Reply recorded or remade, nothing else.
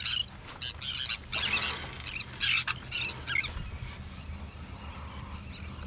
recorded